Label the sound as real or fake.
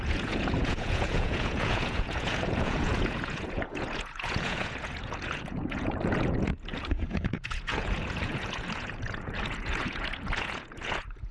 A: fake